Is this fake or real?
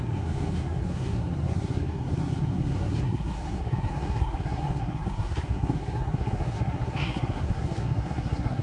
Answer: fake